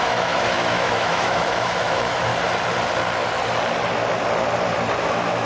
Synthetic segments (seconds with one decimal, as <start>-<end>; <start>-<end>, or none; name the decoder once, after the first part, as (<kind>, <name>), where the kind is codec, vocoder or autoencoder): 0.0-2.3 (autoencoder, DAC-VAE); 5.0-5.5